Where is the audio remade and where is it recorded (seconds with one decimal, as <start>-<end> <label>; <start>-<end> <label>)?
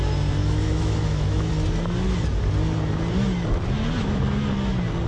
0.0-0.4 recorded; 0.4-1.5 remade; 1.5-5.1 recorded